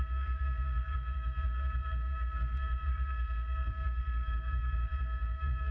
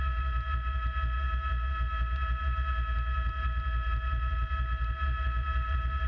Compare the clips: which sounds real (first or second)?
second